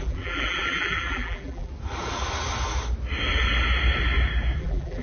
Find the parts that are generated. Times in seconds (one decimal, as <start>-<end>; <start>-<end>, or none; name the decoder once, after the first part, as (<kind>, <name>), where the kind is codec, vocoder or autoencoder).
0.0-1.7 (vocoder, BigVGAN v2); 4.6-5.0